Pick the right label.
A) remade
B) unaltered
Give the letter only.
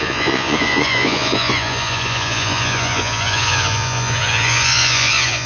A